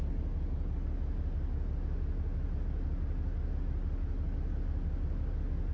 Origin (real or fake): real